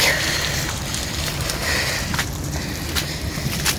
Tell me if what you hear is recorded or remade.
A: remade